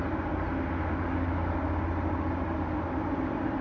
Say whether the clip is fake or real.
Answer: real